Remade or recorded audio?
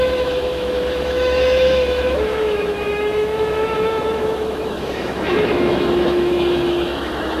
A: remade